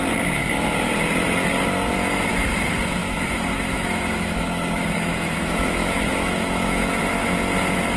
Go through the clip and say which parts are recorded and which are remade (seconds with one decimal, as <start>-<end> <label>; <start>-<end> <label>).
0.0-3.0 recorded; 3.0-7.0 remade; 7.0-8.0 recorded